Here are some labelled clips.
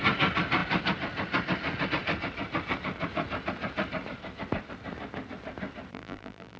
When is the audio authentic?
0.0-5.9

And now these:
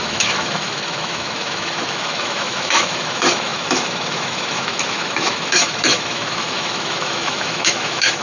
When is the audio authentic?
none

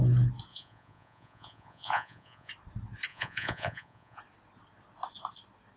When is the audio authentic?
0.0-0.5; 2.5-3.1; 4.2-5.8

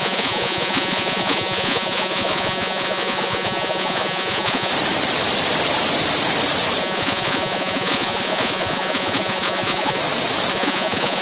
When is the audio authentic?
4.7-6.8; 10.0-10.5